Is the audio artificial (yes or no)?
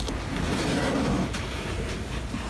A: no